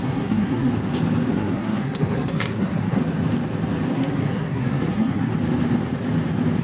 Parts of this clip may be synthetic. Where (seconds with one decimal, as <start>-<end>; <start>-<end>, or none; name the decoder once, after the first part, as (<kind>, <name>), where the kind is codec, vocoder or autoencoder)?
0.0-0.7 (codec, SNAC); 1.3-3.0; 3.9-5.3